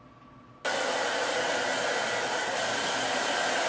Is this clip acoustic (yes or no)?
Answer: yes